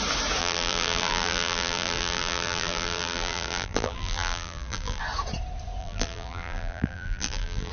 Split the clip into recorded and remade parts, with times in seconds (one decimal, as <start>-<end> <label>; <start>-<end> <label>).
0.0-0.4 recorded; 0.4-5.0 remade; 5.0-5.8 recorded; 5.8-7.7 remade